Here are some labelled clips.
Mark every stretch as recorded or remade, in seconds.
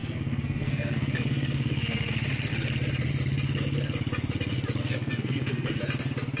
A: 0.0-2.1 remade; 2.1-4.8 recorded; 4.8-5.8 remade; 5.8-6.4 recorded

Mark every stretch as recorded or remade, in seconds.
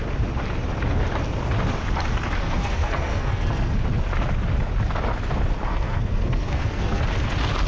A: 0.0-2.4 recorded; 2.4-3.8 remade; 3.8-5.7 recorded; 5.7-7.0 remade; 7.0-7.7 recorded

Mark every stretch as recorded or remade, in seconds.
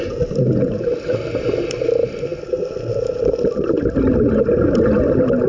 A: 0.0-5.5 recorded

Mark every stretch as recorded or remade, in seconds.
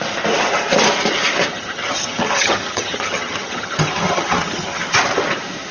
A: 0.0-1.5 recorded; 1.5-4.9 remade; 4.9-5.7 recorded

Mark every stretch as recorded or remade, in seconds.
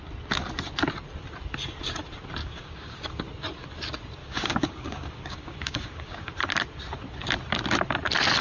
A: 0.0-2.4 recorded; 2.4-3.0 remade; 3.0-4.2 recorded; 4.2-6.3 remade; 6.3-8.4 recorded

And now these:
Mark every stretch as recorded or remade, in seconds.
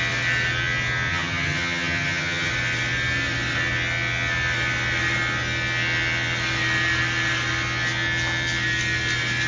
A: 0.0-1.1 recorded; 1.1-2.5 remade; 2.5-9.5 recorded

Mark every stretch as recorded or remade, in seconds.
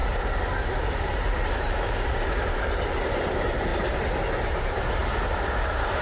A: 0.0-3.3 remade; 3.3-5.0 recorded; 5.0-6.0 remade